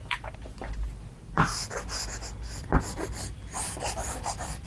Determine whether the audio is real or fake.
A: real